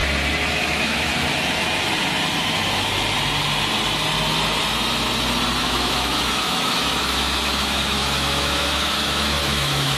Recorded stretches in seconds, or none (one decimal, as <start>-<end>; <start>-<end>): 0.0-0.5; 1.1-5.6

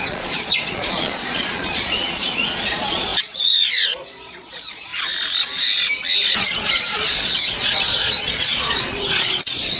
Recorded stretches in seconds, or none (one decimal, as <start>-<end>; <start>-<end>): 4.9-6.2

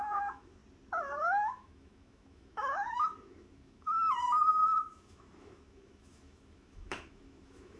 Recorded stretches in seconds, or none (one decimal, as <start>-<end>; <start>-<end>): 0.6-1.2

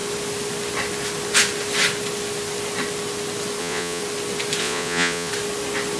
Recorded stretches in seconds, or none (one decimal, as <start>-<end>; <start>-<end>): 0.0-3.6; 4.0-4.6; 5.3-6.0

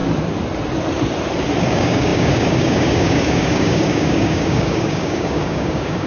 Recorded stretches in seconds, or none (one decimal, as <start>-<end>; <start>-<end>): 0.0-1.6